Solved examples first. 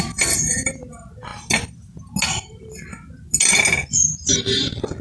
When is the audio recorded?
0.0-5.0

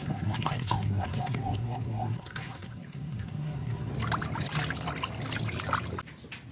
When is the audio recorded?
3.9-6.5

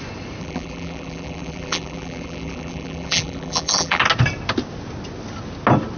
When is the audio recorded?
0.0-0.4; 4.0-6.0

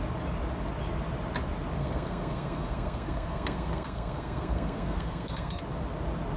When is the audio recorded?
0.0-1.8; 5.6-6.4